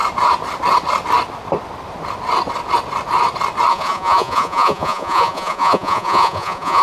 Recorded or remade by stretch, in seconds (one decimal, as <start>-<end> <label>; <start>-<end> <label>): 0.0-3.7 recorded; 3.7-6.8 remade